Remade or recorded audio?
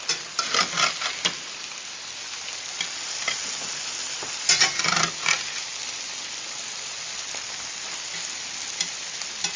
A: recorded